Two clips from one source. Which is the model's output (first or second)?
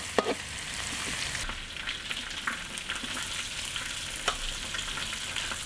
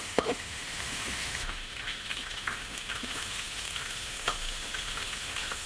second